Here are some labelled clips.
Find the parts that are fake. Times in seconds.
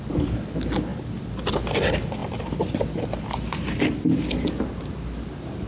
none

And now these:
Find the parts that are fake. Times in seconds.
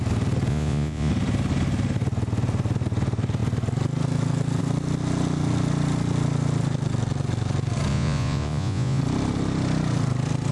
0.5-1.1; 7.9-9.0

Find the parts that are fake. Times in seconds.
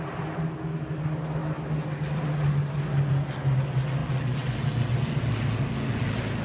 none